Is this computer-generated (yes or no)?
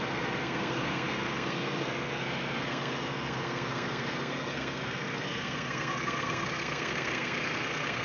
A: yes